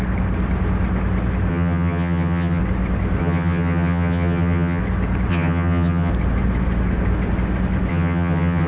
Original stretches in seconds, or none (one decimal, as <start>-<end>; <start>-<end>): 0.0-1.5; 2.6-3.2; 4.8-5.3; 6.1-7.9